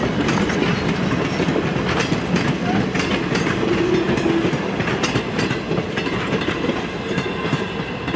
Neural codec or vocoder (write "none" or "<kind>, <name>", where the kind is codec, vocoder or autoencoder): none